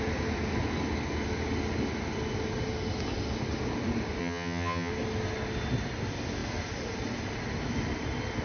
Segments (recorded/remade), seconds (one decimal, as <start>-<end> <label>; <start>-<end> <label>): 0.0-4.2 recorded; 4.2-4.9 remade; 4.9-8.4 recorded